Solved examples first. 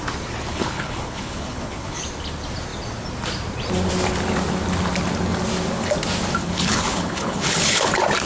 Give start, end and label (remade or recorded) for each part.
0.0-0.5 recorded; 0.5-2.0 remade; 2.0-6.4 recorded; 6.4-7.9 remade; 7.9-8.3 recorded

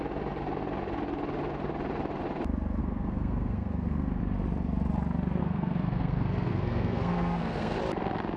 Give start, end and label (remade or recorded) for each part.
0.0-2.8 recorded; 2.8-4.2 remade; 4.2-5.4 recorded; 5.4-7.8 remade; 7.8-8.4 recorded

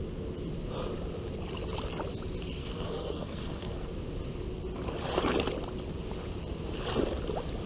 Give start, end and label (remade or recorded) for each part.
0.0-2.6 recorded; 2.6-3.9 remade; 3.9-7.7 recorded